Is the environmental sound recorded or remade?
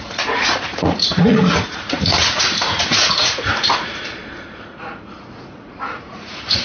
remade